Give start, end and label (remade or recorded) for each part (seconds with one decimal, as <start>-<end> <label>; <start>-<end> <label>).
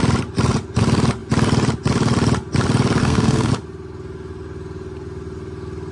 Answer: 0.0-3.0 recorded; 3.0-3.5 remade; 3.5-5.9 recorded